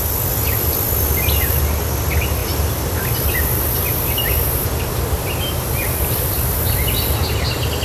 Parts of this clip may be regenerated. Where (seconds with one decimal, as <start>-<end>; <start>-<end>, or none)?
none